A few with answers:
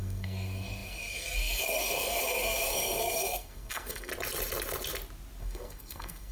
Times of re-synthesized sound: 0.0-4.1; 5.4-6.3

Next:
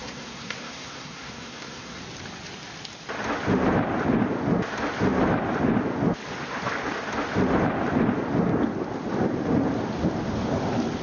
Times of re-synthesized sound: 0.0-2.0